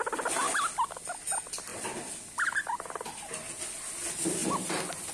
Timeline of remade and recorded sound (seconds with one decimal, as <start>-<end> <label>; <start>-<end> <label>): 0.0-1.7 recorded; 1.7-3.9 remade; 3.9-5.1 recorded

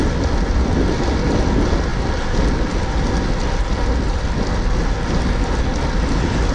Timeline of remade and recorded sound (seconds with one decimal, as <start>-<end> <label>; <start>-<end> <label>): 0.0-6.5 recorded

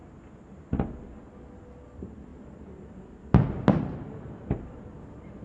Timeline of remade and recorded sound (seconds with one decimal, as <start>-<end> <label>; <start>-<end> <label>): 0.0-2.3 recorded; 2.3-4.1 remade; 4.1-5.4 recorded

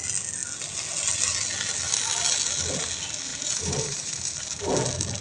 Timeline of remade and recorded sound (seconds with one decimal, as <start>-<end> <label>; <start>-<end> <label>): 0.0-3.3 recorded; 3.3-4.7 remade; 4.7-5.2 recorded

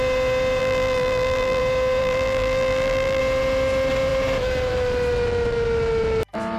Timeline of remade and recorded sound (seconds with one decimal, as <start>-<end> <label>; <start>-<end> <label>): 0.0-0.6 recorded; 0.6-1.6 remade; 1.6-2.0 recorded; 2.0-3.2 remade; 3.2-6.6 recorded

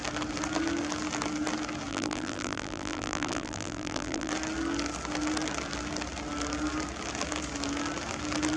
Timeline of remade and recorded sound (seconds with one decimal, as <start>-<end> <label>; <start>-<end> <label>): 0.0-1.9 recorded; 1.9-4.3 remade; 4.3-8.6 recorded

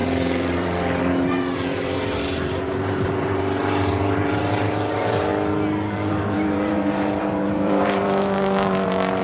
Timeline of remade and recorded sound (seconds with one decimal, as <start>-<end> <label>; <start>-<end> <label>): 0.0-5.3 remade; 5.3-6.1 recorded; 6.1-9.2 remade

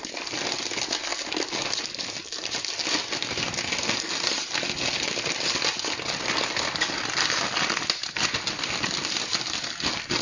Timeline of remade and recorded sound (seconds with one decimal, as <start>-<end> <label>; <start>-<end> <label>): 0.0-10.2 recorded